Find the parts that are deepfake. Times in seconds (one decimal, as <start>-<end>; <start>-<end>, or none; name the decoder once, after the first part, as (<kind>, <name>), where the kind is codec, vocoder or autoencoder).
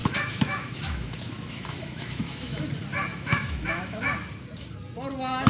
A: 0.0-2.7 (autoencoder, DAC-VAE); 3.1-4.0